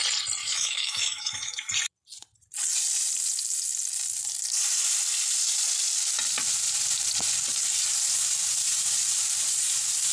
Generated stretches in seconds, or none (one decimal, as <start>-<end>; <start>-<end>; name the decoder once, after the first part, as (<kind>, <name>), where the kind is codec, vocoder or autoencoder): 0.4-1.7 (autoencoder, DAC-VAE)